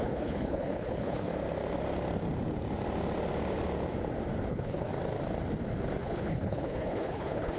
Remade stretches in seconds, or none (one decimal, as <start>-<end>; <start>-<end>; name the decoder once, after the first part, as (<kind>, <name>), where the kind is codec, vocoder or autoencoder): 0.0-1.3 (codec, HILCodec); 4.5-4.9; 6.0-7.6